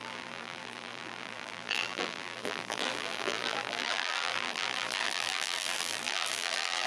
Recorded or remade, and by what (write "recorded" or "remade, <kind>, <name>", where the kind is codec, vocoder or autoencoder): remade, vocoder, BigVGAN v2